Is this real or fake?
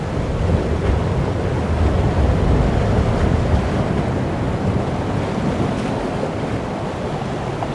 real